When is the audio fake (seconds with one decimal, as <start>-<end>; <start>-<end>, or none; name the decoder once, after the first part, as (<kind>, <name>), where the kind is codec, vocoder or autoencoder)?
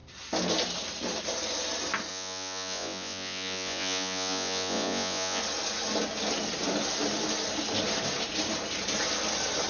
2.1-5.4 (vocoder, Vocos)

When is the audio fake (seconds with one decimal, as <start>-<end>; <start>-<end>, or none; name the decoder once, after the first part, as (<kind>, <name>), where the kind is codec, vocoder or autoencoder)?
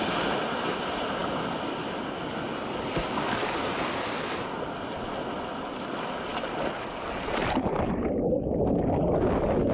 none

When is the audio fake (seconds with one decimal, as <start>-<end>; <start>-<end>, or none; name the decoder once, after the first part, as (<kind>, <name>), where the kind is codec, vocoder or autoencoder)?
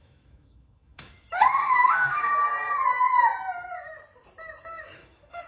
0.0-2.3 (autoencoder, DAC-VAE); 4.6-5.5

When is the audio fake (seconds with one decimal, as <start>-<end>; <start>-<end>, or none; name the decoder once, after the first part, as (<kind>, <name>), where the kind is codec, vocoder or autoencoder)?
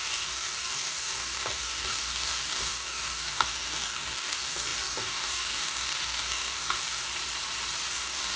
0.0-7.1 (codec, DAC); 7.9-8.4